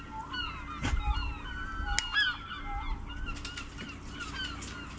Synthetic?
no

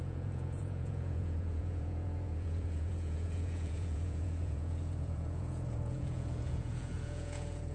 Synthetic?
yes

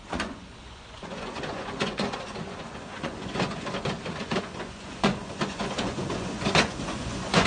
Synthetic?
yes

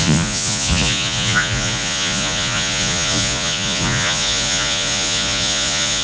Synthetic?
yes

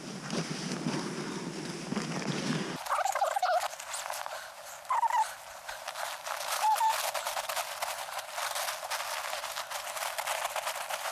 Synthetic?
no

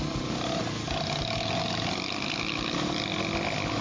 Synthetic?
no